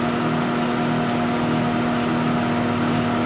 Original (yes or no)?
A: yes